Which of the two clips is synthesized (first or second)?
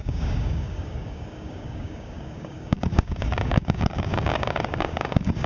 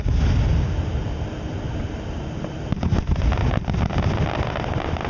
first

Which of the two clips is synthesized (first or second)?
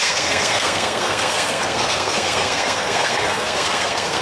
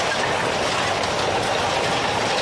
first